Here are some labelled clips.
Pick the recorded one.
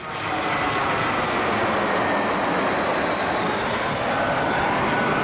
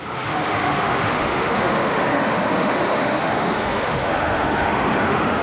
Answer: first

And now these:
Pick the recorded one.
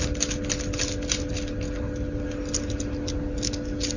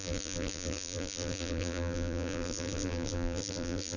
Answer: first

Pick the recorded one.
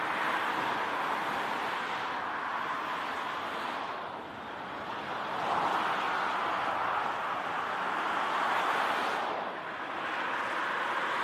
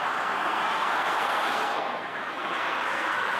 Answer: first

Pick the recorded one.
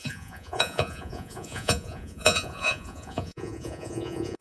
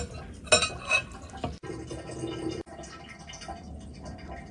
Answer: second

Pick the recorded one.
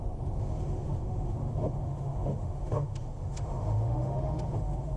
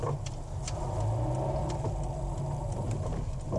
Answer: second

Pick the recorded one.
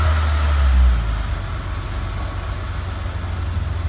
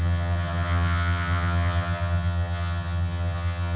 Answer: first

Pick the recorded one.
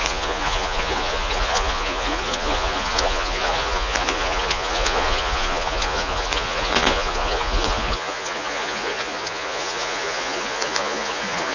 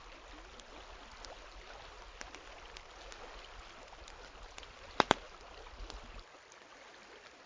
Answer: second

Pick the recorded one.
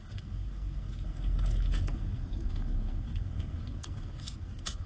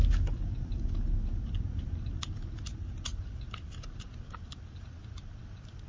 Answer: second